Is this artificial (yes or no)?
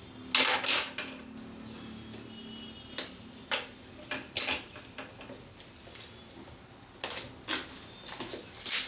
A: no